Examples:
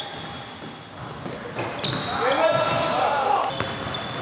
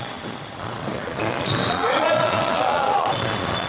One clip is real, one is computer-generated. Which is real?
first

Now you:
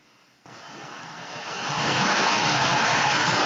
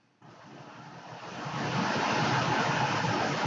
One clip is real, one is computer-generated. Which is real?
second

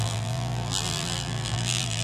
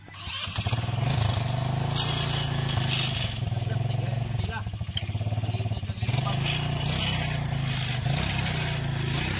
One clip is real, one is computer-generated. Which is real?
second